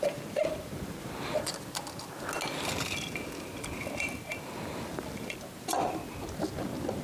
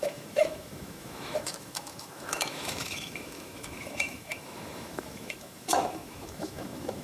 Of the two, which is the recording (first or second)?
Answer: first